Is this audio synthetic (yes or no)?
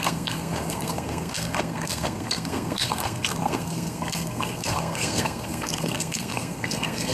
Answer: yes